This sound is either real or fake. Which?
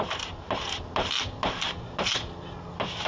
real